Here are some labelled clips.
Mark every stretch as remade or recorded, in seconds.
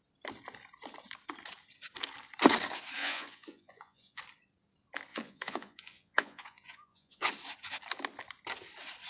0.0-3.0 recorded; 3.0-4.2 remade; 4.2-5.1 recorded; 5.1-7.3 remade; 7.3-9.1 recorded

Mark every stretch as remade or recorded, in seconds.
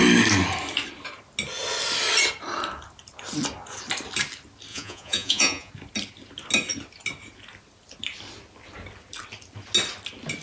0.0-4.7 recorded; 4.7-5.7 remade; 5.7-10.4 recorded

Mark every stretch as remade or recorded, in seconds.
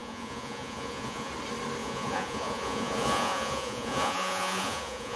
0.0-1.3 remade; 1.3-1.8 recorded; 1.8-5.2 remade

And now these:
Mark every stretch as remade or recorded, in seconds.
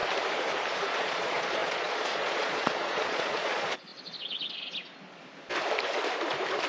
0.0-0.8 recorded; 0.8-3.9 remade; 3.9-6.7 recorded